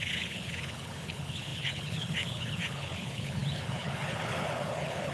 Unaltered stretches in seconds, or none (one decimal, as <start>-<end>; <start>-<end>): none